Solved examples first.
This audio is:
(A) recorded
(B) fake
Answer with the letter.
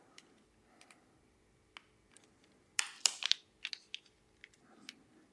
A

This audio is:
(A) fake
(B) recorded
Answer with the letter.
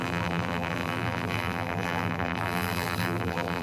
A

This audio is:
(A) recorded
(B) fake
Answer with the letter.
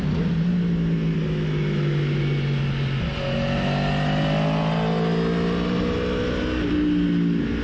A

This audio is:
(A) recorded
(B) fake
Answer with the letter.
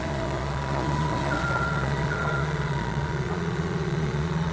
B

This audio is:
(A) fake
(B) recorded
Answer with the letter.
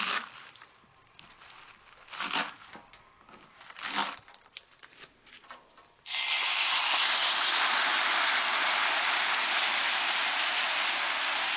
B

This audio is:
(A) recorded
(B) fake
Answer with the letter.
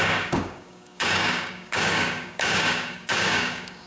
B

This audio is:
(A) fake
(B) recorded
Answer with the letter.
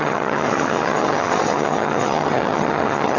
A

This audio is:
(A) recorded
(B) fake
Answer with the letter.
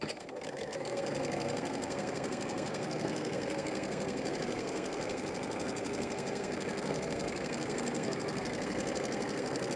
B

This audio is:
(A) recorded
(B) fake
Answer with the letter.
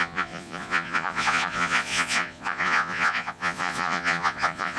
B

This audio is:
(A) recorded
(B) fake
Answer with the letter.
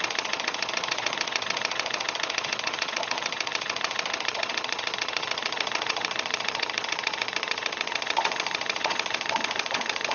B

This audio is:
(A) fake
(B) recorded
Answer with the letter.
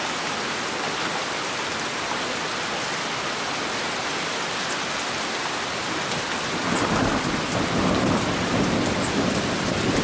B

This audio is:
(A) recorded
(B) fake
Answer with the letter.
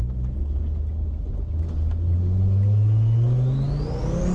A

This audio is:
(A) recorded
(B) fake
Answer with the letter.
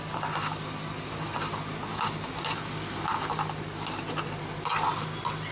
A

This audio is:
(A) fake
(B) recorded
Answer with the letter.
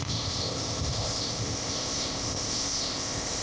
A